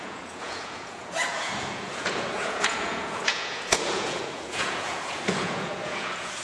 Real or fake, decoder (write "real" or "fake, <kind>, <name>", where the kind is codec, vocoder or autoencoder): fake, vocoder, Vocos